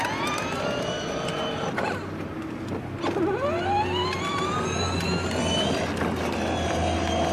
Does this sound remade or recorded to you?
recorded